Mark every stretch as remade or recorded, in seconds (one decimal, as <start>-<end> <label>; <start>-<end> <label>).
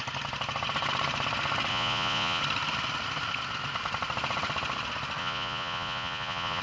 0.0-1.7 recorded; 1.7-2.4 remade; 2.4-5.2 recorded; 5.2-6.6 remade